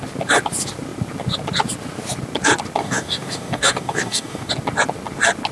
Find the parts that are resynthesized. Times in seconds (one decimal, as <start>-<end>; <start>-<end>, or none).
2.8-4.5